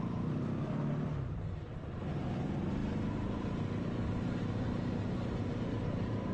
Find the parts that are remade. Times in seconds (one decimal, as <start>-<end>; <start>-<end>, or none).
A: none